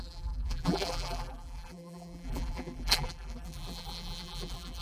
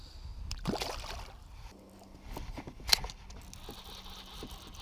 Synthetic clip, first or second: first